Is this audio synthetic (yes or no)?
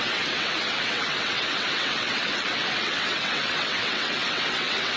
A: yes